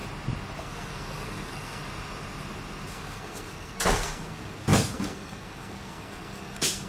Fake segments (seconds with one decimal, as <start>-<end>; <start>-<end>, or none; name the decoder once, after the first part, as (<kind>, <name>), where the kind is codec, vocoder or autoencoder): 0.6-1.8 (codec, SNAC); 2.9-6.9